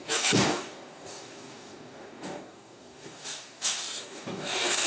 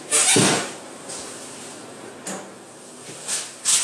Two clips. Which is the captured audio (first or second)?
second